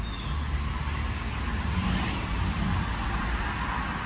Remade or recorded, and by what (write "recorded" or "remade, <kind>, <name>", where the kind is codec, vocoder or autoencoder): recorded